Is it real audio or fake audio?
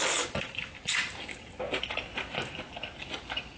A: real